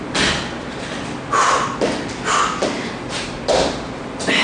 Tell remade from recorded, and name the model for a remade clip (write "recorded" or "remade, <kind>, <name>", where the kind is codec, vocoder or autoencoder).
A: recorded